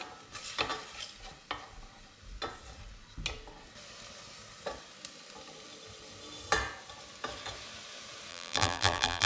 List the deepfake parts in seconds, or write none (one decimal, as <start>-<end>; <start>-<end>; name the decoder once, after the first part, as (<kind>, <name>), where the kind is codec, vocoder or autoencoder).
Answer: 8.3-9.3 (vocoder, BigVGAN v2)